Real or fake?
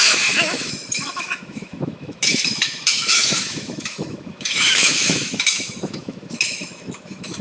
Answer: fake